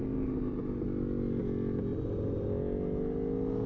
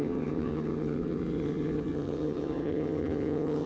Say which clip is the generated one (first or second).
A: second